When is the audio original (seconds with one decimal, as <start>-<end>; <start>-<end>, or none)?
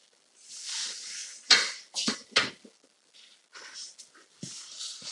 0.0-5.1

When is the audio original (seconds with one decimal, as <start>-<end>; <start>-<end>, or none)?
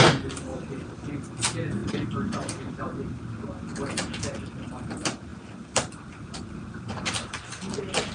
0.0-0.5; 1.1-1.8; 3.2-5.3; 7.6-8.1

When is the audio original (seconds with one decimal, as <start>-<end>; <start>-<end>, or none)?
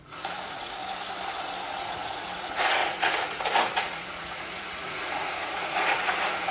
0.8-1.8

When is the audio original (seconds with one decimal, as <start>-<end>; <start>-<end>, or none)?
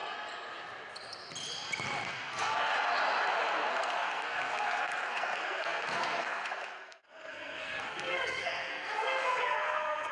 0.0-2.1; 2.7-3.7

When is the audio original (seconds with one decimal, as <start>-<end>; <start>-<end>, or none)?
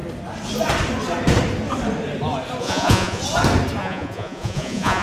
0.0-2.6; 3.2-3.8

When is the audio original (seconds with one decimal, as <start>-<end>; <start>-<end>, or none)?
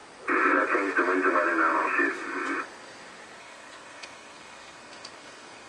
0.0-3.4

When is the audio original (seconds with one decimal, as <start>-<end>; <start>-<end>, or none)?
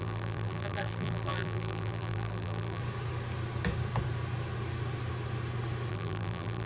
2.8-5.9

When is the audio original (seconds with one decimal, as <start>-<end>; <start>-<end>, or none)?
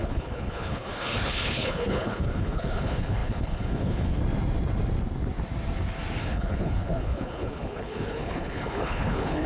4.2-6.2